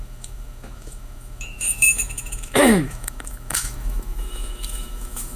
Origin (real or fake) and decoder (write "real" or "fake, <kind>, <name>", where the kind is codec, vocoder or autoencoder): fake, autoencoder, DAC-VAE